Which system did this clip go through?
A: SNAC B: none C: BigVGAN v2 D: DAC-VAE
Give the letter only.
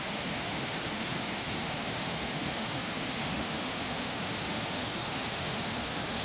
D